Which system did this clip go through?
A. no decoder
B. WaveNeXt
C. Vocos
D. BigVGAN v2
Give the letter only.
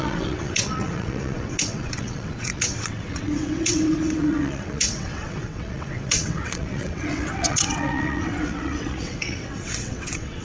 B